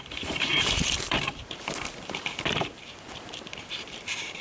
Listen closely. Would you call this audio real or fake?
fake